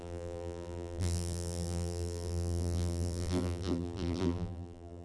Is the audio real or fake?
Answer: fake